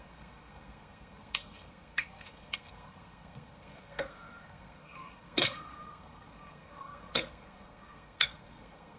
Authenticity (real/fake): fake